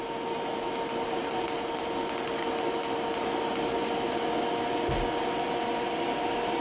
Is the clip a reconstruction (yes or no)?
no